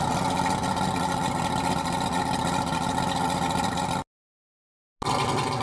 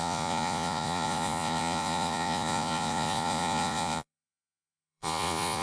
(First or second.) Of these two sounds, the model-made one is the second